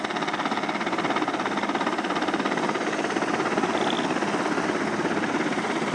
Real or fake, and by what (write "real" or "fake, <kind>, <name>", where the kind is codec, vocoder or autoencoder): real